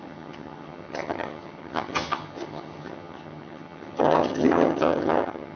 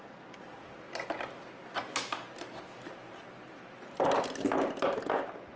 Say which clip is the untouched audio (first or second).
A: second